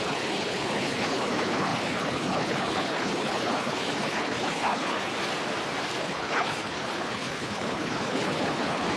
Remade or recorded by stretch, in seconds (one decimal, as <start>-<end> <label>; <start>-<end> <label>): 0.0-5.1 remade; 5.1-6.0 recorded; 6.0-9.0 remade